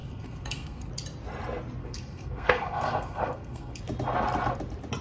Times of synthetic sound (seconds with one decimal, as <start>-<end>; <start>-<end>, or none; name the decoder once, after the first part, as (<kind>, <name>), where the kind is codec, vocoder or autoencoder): 0.0-0.9 (codec, SNAC); 1.8-3.8